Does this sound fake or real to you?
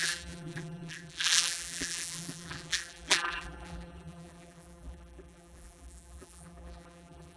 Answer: fake